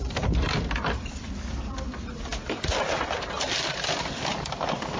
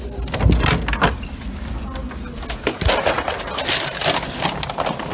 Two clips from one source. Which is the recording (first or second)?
second